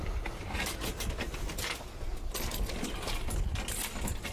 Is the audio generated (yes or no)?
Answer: no